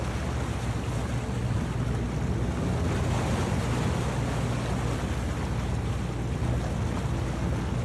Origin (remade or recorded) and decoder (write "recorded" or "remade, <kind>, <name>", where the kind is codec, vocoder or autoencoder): recorded